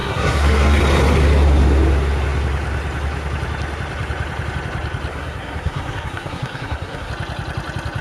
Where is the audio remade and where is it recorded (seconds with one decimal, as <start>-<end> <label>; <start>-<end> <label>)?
0.0-0.8 remade; 0.8-5.1 recorded; 5.1-7.1 remade; 7.1-8.0 recorded